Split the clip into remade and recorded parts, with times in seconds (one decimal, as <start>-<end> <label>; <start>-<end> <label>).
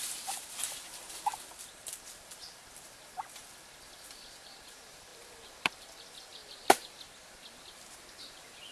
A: 0.0-5.1 recorded; 5.1-5.8 remade; 5.8-6.3 recorded; 6.3-7.0 remade; 7.0-8.7 recorded